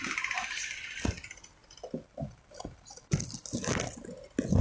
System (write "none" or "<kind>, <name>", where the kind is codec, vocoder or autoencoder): none